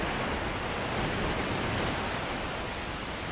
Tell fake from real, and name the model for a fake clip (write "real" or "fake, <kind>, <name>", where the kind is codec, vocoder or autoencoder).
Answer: fake, vocoder, BigVGAN v2